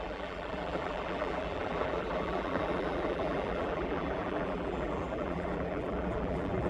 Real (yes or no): no